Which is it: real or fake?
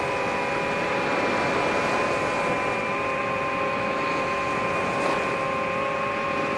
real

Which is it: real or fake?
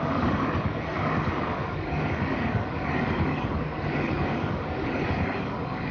fake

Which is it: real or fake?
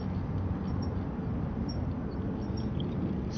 real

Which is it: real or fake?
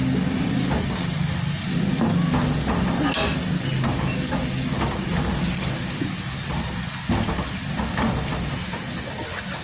real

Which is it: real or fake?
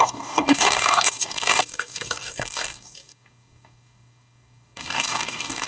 fake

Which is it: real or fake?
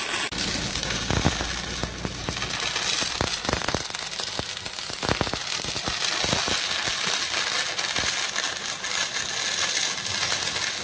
real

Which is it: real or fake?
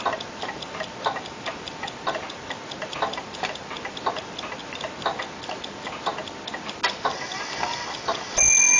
real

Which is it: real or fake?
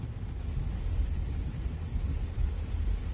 real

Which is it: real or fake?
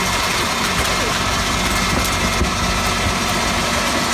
real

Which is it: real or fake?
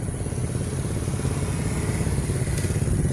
real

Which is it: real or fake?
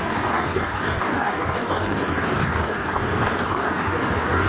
fake